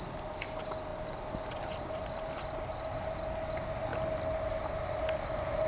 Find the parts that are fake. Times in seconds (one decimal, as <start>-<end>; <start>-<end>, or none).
none